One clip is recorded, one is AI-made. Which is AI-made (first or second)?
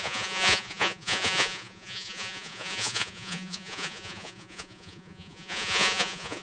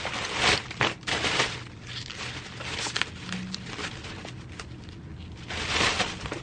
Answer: first